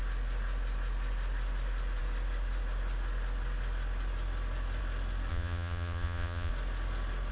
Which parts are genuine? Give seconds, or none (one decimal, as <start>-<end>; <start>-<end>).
0.0-5.3; 6.5-7.3